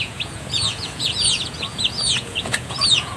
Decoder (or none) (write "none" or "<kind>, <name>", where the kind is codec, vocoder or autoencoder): vocoder, Vocos